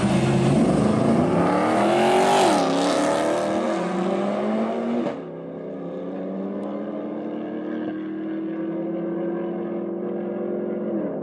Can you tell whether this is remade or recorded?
recorded